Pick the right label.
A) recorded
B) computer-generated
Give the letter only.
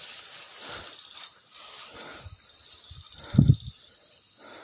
A